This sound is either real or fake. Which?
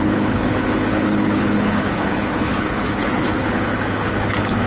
fake